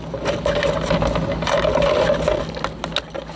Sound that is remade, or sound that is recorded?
recorded